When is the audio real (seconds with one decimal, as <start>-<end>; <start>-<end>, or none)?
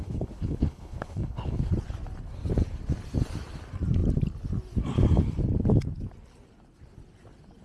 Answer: 1.7-7.6